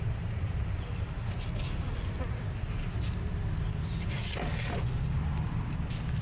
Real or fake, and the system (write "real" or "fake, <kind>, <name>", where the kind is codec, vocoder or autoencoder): real